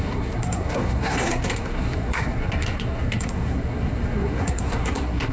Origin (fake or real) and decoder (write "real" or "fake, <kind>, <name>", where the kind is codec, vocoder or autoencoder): fake, codec, SNAC